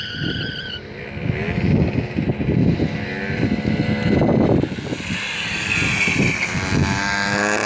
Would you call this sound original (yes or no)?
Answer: yes